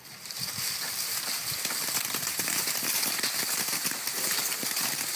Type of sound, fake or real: real